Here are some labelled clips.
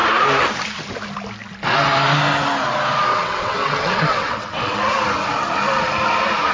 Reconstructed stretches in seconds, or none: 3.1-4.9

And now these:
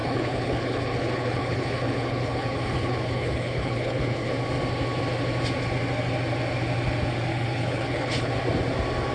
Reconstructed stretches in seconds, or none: 0.0-4.3; 7.3-8.3

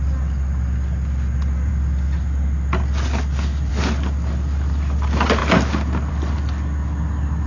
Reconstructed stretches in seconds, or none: none

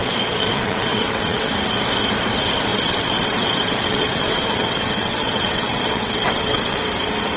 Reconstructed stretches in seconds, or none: 0.0-1.5; 2.7-6.8

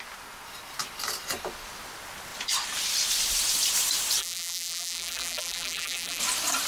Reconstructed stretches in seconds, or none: 4.2-6.2

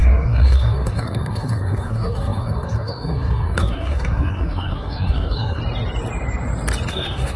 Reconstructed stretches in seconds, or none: 0.0-5.6; 6.9-7.4

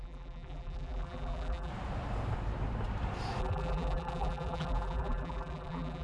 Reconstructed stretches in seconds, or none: 0.0-1.7; 3.4-6.0